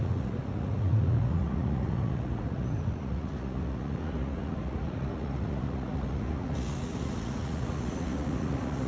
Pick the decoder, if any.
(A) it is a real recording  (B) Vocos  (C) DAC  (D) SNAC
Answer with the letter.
B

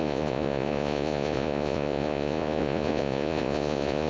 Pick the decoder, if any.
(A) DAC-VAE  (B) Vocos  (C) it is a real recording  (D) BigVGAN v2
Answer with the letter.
B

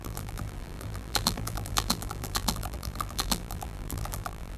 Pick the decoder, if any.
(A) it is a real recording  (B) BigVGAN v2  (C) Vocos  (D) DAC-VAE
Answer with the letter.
B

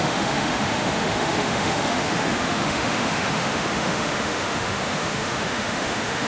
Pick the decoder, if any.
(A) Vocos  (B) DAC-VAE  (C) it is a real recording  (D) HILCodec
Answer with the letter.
B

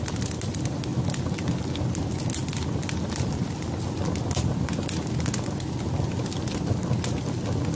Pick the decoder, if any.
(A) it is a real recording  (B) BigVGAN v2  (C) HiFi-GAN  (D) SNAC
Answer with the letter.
A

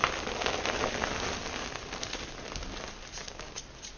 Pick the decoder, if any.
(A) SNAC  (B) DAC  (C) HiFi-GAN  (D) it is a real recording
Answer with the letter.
D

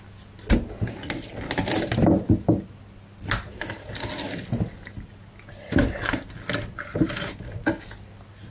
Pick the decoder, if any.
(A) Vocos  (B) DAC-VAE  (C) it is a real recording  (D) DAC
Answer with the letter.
C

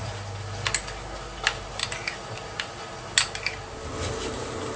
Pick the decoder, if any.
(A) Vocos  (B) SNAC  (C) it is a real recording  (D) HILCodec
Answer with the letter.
C